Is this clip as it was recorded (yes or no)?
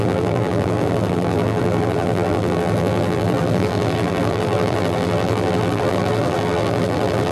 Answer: no